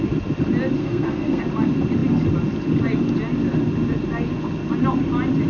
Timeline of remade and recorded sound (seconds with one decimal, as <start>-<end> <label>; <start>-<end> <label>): 0.0-0.8 recorded; 0.8-1.4 remade; 1.4-5.5 recorded